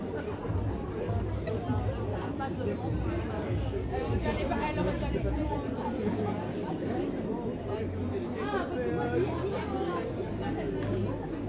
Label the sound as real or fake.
real